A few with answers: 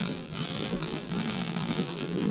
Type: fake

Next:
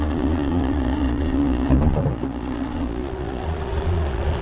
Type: fake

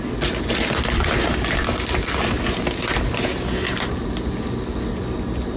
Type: real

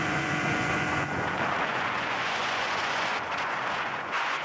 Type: fake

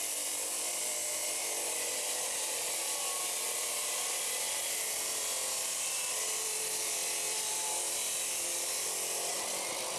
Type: fake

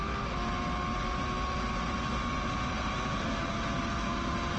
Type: real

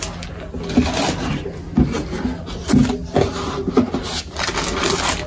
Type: real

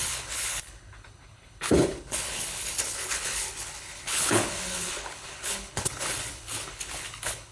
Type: fake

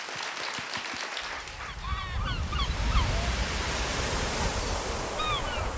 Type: real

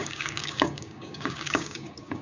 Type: fake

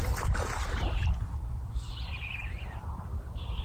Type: real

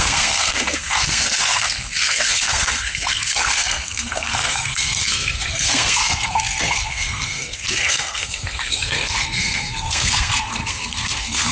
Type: fake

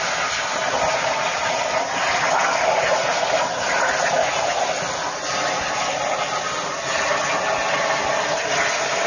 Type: real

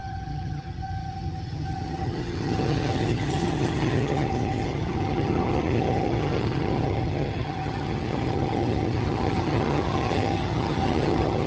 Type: fake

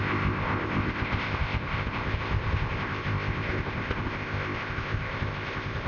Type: fake